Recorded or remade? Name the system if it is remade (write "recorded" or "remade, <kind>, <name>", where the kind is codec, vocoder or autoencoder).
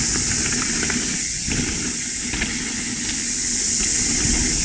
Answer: recorded